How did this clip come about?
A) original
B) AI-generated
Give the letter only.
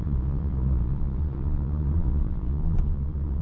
B